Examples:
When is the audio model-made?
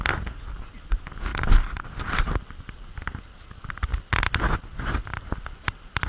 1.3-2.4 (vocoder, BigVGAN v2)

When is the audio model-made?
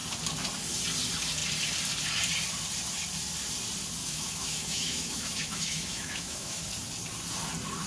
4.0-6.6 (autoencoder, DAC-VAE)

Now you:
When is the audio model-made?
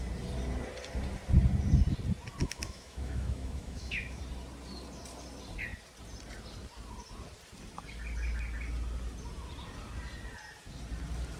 2.4-4.2 (autoencoder, DAC-VAE)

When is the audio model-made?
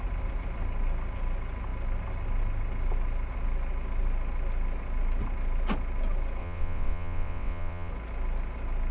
6.4-7.9 (vocoder, WaveNeXt)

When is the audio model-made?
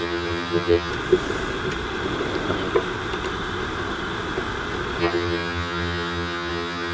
0.0-0.9 (vocoder, HiFi-GAN); 5.0-6.9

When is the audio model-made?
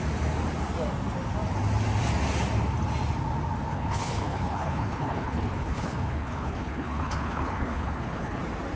3.7-8.4 (codec, HILCodec)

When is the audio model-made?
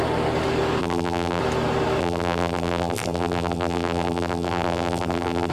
0.8-1.4 (vocoder, BigVGAN v2); 2.0-5.5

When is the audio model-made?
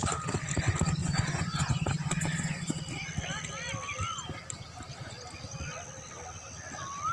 1.0-2.8 (vocoder, Vocos)